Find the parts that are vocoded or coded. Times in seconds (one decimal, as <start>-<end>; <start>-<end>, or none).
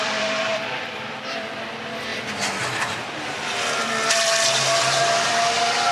0.0-2.1